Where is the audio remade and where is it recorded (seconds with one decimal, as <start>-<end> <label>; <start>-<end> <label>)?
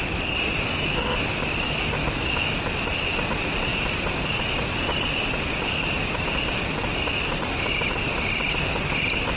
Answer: 0.0-9.4 recorded